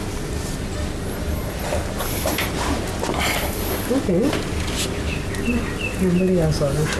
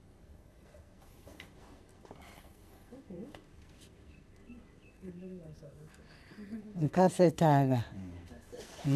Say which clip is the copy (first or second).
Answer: second